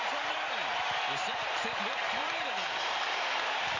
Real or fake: fake